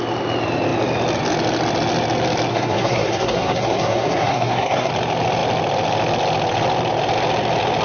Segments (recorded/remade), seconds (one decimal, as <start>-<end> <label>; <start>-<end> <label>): 0.0-2.5 recorded; 2.5-4.9 remade; 4.9-7.8 recorded